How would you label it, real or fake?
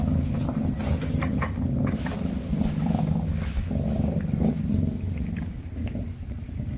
real